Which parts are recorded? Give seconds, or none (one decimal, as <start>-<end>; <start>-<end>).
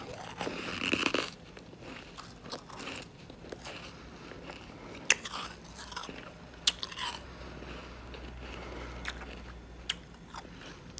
0.0-11.0